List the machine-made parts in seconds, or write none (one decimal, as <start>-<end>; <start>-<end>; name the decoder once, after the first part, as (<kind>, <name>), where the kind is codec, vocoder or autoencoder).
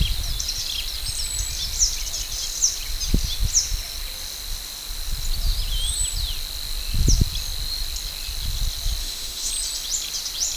9.0-9.5 (autoencoder, DAC-VAE)